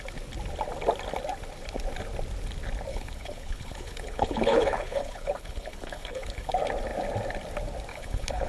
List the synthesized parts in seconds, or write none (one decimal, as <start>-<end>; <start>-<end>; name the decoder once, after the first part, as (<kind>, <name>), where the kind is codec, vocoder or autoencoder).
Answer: 2.9-6.5 (codec, HILCodec); 7.9-8.5